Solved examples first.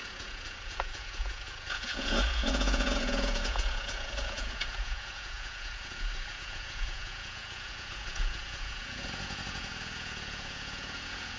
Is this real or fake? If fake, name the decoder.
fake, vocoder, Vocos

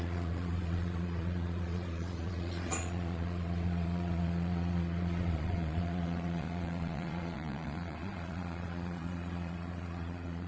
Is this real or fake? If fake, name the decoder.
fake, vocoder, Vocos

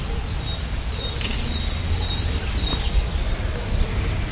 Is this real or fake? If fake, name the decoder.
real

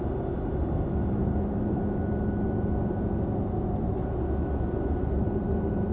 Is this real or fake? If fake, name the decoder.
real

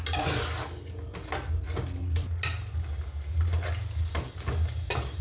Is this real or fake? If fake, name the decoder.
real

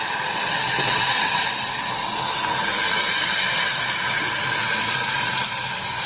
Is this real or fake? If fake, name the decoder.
real